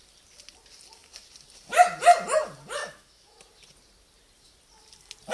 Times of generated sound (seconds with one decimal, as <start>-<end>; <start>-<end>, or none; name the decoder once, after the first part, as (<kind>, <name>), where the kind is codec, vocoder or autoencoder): 2.8-3.4 (autoencoder, DAC-VAE)

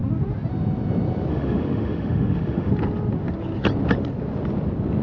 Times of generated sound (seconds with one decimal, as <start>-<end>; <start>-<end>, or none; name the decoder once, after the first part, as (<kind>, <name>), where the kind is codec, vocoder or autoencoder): 1.3-2.7 (autoencoder, DAC-VAE)

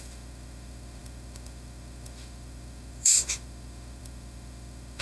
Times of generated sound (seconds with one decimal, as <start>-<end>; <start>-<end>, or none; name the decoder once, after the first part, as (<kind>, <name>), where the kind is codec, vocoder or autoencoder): 0.0-5.0 (autoencoder, DAC-VAE)

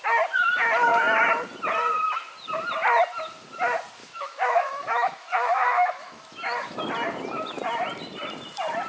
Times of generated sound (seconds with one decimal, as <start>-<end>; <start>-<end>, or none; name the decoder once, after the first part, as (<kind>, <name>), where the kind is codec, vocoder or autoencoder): 4.0-6.8 (autoencoder, DAC-VAE)